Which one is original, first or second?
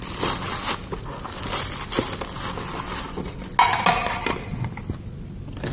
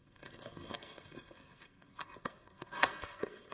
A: first